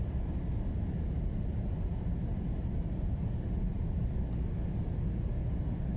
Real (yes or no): yes